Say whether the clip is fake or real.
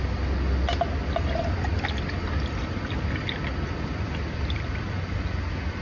real